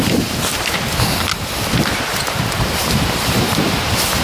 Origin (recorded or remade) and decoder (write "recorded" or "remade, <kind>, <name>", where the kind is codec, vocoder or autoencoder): remade, vocoder, BigVGAN v2